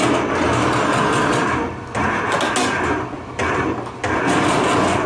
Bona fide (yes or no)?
yes